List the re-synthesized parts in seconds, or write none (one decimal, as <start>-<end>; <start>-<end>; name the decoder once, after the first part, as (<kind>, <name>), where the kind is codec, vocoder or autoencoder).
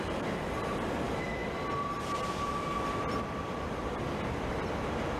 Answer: none